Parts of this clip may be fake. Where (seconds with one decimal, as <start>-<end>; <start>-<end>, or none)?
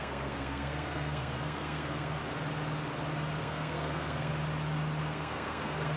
0.0-2.2; 3.4-4.3; 5.0-6.0